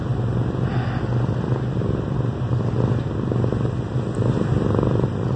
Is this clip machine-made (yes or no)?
no